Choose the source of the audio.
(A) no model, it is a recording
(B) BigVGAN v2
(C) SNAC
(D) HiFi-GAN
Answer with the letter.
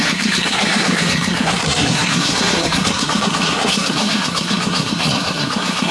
C